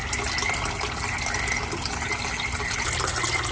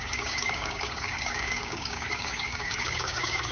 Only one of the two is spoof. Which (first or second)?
second